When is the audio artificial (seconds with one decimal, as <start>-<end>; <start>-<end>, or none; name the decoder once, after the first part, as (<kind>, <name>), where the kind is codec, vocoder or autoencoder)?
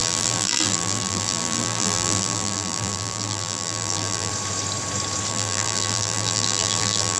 0.0-4.3 (vocoder, BigVGAN v2); 5.3-7.2